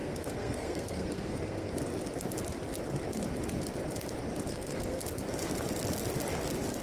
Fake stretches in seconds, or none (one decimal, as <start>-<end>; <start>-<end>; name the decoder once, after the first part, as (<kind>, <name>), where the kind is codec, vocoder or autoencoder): 0.0-1.7 (codec, SNAC); 4.5-5.0